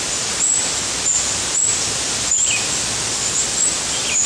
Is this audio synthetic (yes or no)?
no